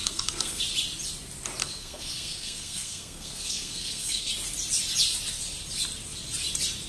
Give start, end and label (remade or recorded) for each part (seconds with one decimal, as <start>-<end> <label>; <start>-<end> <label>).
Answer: 0.0-0.6 remade; 0.6-1.6 recorded; 1.6-4.3 remade; 4.3-6.9 recorded